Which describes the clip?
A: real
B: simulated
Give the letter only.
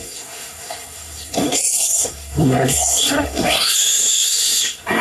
B